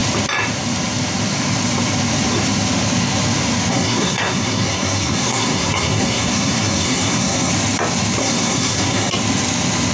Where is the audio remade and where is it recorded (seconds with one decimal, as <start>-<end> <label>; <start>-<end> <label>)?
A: 0.0-3.7 recorded; 3.7-7.5 remade; 7.5-8.2 recorded; 8.2-9.1 remade; 9.1-9.9 recorded